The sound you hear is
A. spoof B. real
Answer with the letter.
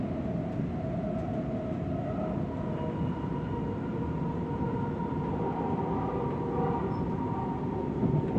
B